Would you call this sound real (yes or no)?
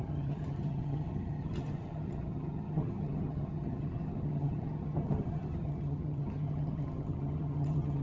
no